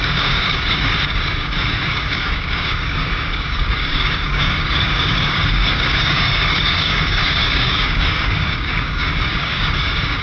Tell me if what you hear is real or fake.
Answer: fake